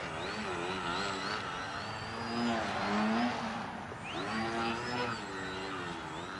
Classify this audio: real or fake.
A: real